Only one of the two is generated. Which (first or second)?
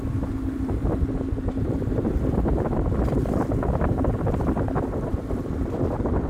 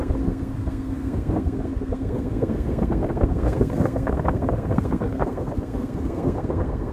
second